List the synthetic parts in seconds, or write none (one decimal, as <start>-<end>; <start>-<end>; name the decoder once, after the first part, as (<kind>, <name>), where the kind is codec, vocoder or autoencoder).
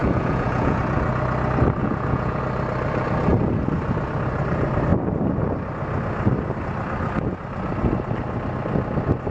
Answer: 0.0-0.8 (vocoder, Vocos); 1.8-2.4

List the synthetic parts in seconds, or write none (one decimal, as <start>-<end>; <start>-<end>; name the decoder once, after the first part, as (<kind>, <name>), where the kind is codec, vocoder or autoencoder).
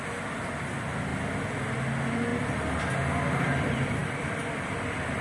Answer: 2.3-2.8 (vocoder, BigVGAN v2); 4.0-4.7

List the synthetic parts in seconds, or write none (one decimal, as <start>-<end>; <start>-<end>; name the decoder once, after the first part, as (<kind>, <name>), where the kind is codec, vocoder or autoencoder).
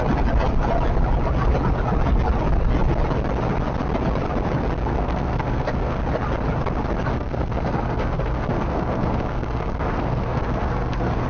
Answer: 4.9-6.0 (codec, SNAC); 7.1-11.3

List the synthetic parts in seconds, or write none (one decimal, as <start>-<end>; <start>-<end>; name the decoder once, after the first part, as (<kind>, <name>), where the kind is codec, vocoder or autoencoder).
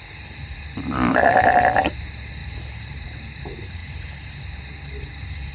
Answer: 0.0-5.5 (vocoder, BigVGAN v2)